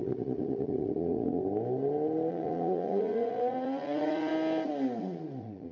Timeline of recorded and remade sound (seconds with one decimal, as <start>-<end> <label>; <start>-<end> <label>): 0.0-1.4 remade; 1.4-2.3 recorded; 2.3-4.3 remade; 4.3-5.0 recorded; 5.0-5.7 remade